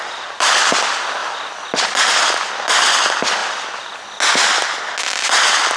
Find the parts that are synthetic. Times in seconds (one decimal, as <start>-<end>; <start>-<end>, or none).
none